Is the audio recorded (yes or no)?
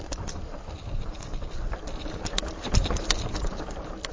yes